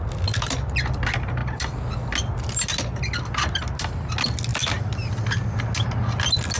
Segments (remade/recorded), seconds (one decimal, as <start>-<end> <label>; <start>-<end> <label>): 0.0-6.6 recorded